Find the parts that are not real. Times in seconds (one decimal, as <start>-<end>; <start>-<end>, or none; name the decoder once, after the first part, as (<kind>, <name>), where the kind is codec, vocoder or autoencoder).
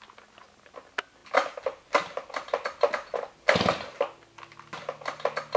none